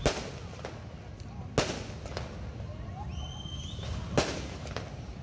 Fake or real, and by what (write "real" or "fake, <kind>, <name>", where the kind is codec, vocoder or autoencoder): real